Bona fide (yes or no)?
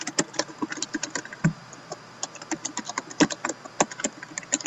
yes